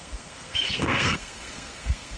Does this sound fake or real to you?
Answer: fake